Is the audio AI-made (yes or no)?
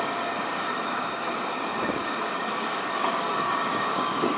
yes